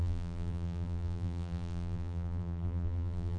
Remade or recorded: remade